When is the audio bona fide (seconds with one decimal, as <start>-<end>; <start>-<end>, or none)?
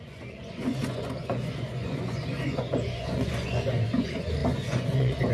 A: none